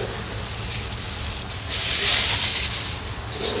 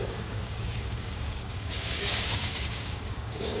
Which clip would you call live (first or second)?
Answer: first